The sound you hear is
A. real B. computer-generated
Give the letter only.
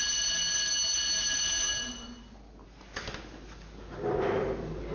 A